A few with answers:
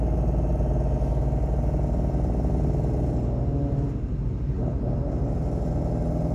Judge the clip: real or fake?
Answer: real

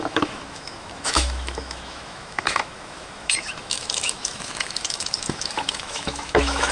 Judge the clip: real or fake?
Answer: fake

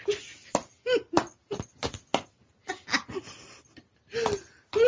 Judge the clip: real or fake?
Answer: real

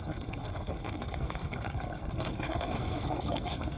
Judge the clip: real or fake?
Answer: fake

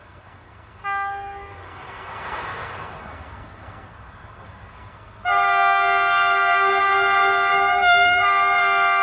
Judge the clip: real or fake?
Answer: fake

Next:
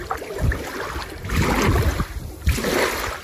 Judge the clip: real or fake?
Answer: real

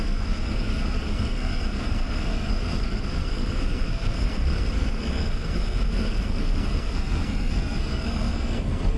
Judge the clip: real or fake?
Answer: fake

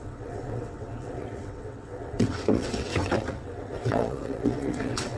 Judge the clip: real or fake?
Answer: fake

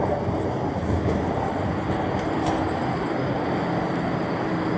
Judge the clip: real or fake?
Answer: real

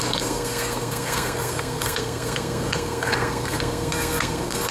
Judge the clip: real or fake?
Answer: fake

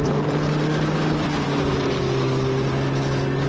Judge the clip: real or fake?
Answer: real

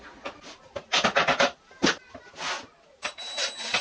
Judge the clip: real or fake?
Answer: real